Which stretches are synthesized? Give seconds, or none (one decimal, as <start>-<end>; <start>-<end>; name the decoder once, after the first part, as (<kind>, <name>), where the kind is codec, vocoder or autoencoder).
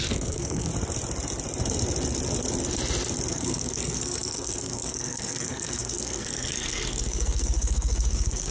0.0-0.7 (codec, SNAC); 3.3-8.5